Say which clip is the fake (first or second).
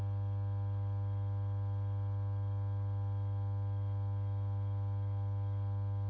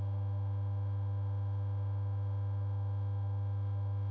second